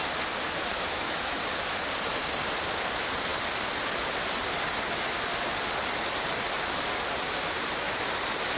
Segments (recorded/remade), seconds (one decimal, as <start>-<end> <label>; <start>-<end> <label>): 0.0-0.7 recorded; 0.7-1.4 remade; 1.4-8.6 recorded

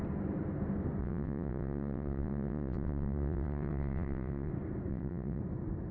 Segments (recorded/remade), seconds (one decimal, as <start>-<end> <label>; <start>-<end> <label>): 0.0-1.0 recorded; 1.0-4.5 remade; 4.5-4.9 recorded; 4.9-5.4 remade; 5.4-5.9 recorded

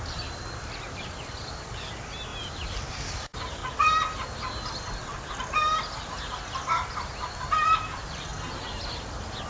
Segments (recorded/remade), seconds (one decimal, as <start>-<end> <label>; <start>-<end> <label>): 0.0-2.3 remade; 2.3-2.9 recorded; 2.9-3.6 remade; 3.6-7.5 recorded; 7.5-8.3 remade; 8.3-9.5 recorded

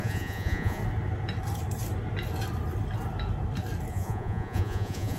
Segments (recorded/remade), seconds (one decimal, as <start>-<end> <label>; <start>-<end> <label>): 0.0-0.8 remade; 0.8-3.9 recorded; 3.9-5.2 remade

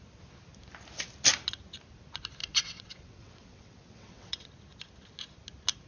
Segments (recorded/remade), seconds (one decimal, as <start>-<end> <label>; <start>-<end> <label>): 0.0-2.4 recorded; 2.4-4.5 remade; 4.5-5.9 recorded

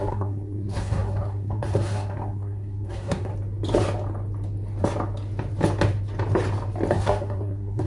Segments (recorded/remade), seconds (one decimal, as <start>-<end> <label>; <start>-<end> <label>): 0.0-3.3 remade; 3.3-6.9 recorded; 6.9-7.9 remade